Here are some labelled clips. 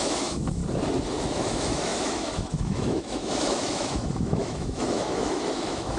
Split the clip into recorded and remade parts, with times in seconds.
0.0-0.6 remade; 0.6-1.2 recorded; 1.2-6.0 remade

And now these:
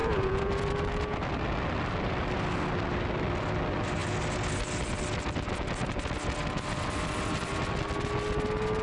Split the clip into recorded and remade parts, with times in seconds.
0.0-0.7 remade; 0.7-8.8 recorded

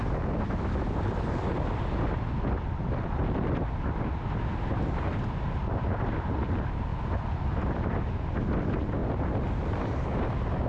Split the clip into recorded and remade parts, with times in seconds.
0.0-10.7 recorded

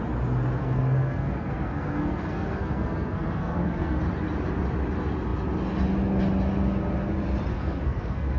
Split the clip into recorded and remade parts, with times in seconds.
0.0-0.6 recorded; 0.6-4.0 remade; 4.0-7.5 recorded; 7.5-8.4 remade

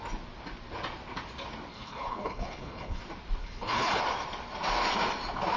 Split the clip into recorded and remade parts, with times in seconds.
0.0-1.7 recorded; 1.7-3.0 remade; 3.0-3.4 recorded; 3.4-4.0 remade; 4.0-5.6 recorded

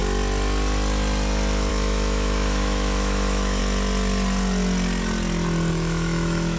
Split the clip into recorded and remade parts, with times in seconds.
0.0-1.7 recorded; 1.7-3.6 remade; 3.6-5.7 recorded; 5.7-6.6 remade